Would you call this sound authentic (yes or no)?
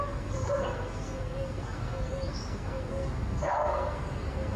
no